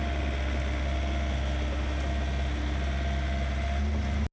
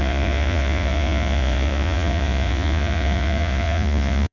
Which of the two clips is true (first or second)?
first